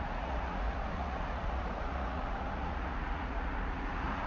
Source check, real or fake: fake